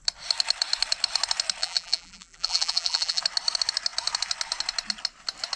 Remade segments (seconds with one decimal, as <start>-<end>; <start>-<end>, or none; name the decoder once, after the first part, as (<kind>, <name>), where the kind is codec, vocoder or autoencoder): 1.6-3.2 (vocoder, BigVGAN v2)